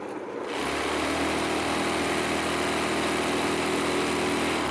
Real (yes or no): yes